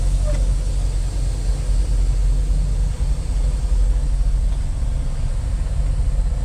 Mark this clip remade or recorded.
recorded